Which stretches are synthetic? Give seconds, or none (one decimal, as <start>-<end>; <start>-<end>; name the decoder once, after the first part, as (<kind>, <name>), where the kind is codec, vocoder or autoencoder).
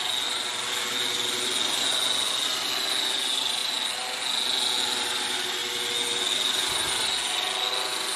none